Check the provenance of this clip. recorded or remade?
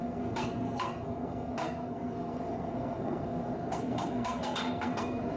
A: remade